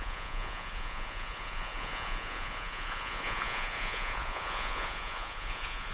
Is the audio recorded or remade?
remade